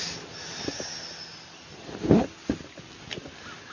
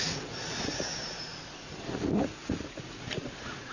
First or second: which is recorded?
first